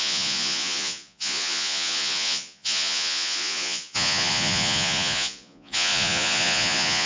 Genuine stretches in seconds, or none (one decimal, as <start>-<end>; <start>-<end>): none